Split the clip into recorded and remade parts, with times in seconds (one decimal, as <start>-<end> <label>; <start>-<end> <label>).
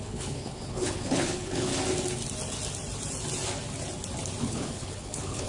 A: 0.0-1.7 remade; 1.7-4.4 recorded; 4.4-5.5 remade